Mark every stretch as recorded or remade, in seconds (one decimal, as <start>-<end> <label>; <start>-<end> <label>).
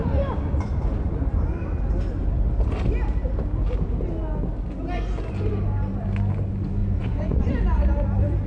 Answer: 0.0-6.8 recorded; 6.8-7.5 remade; 7.5-8.5 recorded